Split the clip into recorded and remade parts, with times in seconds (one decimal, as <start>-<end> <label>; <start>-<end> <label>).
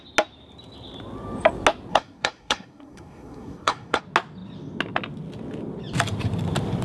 0.0-1.9 recorded; 1.9-4.0 remade; 4.0-6.8 recorded